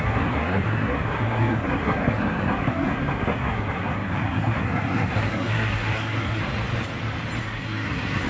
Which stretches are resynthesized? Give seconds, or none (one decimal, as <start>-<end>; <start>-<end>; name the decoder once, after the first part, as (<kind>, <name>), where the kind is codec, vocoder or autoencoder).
0.0-6.4 (codec, SNAC); 7.4-8.3